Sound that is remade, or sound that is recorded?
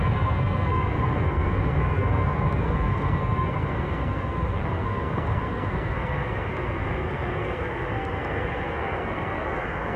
remade